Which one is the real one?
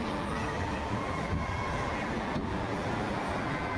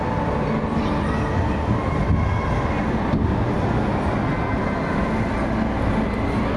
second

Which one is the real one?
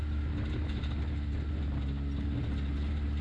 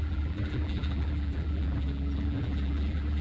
first